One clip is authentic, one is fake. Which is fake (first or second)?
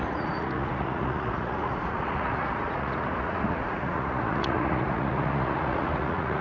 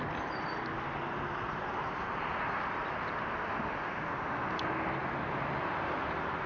first